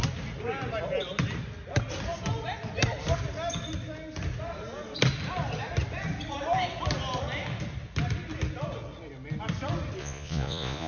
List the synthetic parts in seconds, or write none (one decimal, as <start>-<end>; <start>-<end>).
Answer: 10.0-10.9